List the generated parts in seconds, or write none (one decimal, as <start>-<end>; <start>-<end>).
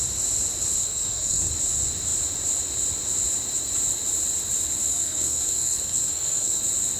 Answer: 0.8-1.5; 4.9-6.6